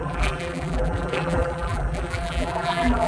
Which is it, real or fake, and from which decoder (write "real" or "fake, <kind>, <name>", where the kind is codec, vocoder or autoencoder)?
fake, vocoder, BigVGAN v2